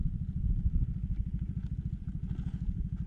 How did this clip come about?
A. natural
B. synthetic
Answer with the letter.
A